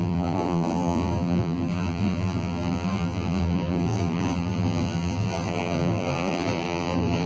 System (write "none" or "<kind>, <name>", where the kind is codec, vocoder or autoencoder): vocoder, BigVGAN v2